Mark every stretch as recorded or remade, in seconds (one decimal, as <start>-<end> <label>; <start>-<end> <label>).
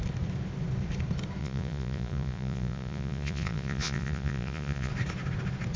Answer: 0.0-1.4 recorded; 1.4-4.9 remade; 4.9-5.8 recorded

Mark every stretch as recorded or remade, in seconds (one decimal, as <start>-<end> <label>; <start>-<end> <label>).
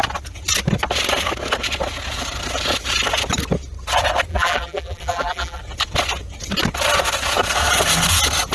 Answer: 0.0-4.3 recorded; 4.3-5.6 remade; 5.6-8.5 recorded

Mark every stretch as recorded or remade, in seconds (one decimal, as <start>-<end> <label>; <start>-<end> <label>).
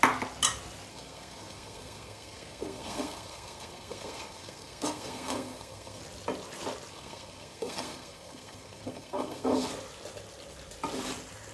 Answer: 0.0-0.9 recorded; 0.9-6.0 remade; 6.0-6.9 recorded; 6.9-9.7 remade; 9.7-11.5 recorded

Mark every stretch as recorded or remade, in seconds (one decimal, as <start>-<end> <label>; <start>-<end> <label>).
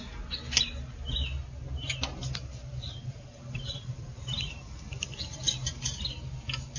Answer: 0.0-2.1 recorded; 2.1-6.2 remade; 6.2-6.8 recorded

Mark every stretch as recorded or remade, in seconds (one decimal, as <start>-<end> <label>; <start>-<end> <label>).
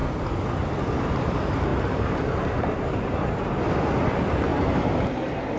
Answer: 0.0-0.7 remade; 0.7-1.7 recorded; 1.7-3.6 remade; 3.6-4.5 recorded; 4.5-5.6 remade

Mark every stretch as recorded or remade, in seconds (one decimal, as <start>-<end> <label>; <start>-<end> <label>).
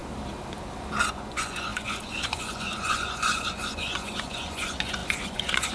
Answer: 0.0-1.0 recorded; 1.0-5.7 remade